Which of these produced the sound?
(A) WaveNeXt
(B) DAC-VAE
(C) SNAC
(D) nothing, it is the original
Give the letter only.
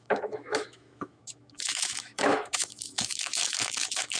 B